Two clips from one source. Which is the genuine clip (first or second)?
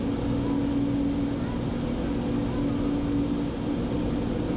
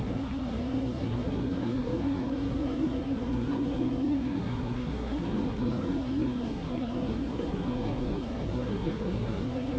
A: first